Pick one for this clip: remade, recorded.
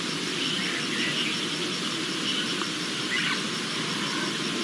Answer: recorded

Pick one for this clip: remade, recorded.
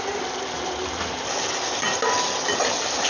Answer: recorded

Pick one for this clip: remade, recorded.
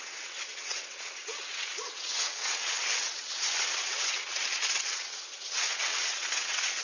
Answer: remade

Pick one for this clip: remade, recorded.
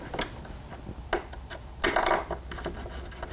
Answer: recorded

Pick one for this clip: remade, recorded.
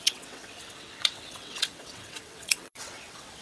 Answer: remade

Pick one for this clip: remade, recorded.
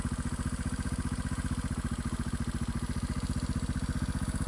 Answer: recorded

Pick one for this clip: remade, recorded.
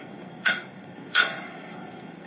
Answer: remade